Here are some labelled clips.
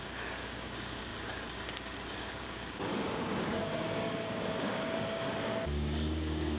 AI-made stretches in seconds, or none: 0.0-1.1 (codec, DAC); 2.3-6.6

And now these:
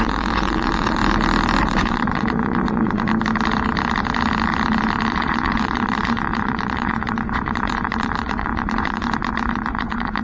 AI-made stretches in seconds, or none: 0.0-1.0 (vocoder, Vocos); 1.6-3.1; 5.1-10.2

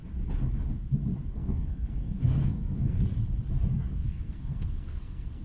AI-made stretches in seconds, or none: 1.3-3.1 (codec, SNAC); 3.7-5.4

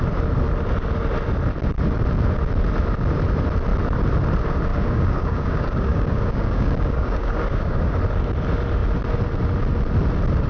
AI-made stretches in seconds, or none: 4.7-8.0 (codec, DAC)

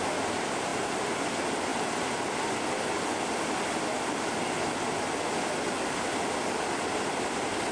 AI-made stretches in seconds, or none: none

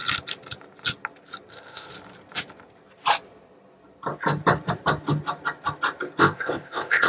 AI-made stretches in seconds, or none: 1.5-1.9 (codec, ZipCodec); 6.2-7.1

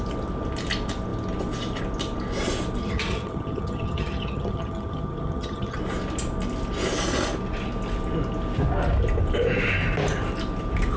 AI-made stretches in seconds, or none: 2.8-5.8 (vocoder, HiFi-GAN)